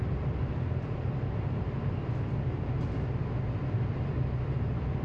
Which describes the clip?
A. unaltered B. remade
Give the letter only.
A